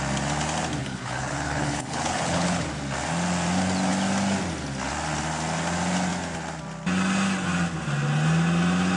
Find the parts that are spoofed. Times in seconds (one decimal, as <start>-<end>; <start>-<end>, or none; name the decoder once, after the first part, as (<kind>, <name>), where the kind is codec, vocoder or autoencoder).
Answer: 0.8-2.7 (codec, HILCodec)

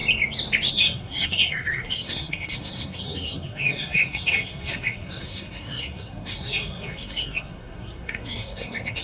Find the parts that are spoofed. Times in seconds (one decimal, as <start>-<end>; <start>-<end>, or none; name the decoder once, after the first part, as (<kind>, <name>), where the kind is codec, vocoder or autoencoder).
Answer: 0.7-9.0 (codec, SNAC)